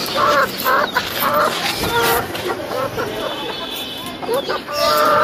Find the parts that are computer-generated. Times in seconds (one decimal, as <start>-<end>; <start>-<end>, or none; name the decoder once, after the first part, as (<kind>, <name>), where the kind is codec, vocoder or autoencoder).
0.0-1.4 (vocoder, BigVGAN v2); 1.8-5.2